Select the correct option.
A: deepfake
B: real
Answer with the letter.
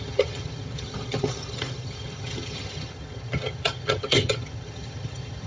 A